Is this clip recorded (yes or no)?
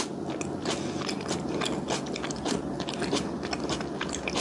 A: yes